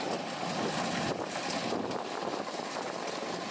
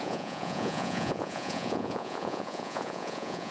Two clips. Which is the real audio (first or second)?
first